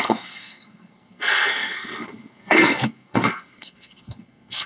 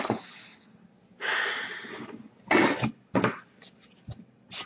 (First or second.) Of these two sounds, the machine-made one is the first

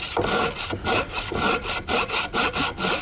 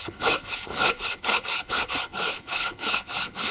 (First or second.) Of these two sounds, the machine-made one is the second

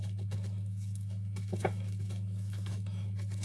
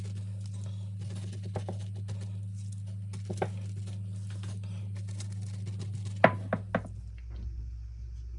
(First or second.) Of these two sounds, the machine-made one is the first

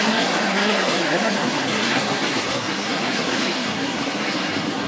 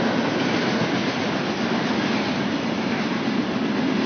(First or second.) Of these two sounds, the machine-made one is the first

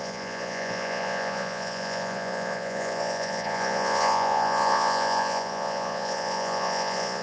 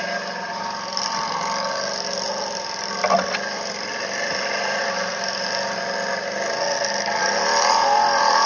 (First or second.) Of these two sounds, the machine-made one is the first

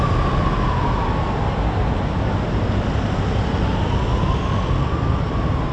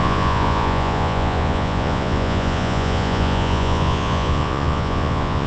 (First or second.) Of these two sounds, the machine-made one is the second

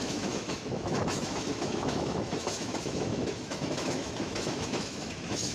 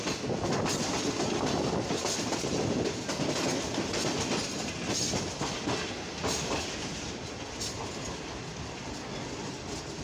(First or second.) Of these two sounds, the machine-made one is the first